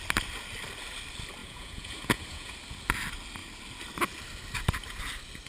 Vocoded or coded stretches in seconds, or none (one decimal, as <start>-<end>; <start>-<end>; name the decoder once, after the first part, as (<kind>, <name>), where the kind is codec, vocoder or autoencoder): 1.4-2.6 (vocoder, Vocos)